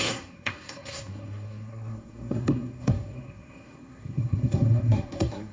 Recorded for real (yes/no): no